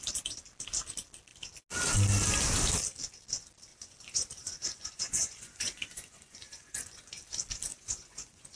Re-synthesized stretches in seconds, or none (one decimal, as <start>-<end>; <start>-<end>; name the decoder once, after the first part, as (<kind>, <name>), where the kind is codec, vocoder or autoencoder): 3.7-7.2 (vocoder, Vocos); 7.7-8.6